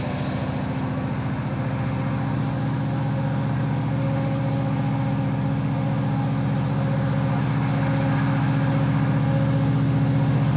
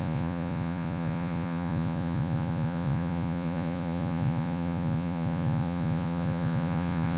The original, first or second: first